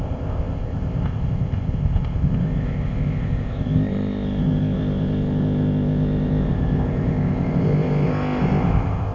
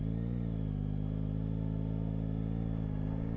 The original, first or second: second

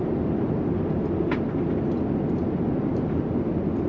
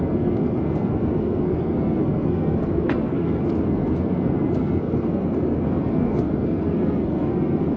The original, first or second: first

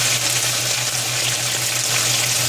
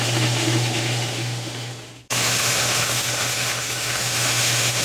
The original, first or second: first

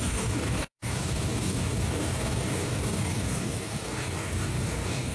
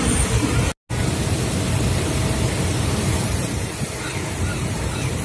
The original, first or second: second